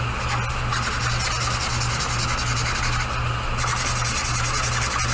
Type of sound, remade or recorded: recorded